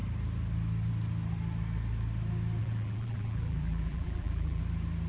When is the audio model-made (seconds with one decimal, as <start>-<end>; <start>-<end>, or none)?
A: 2.6-4.6